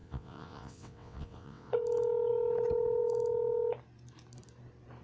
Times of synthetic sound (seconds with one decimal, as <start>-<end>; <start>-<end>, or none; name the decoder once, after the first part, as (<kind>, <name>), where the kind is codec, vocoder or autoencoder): 0.0-1.7 (vocoder, WaveNeXt)